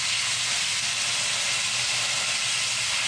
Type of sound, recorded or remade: recorded